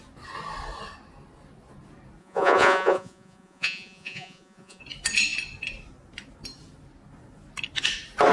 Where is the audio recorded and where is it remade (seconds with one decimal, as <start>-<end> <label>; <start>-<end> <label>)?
0.0-2.2 recorded; 2.2-4.8 remade; 4.8-8.3 recorded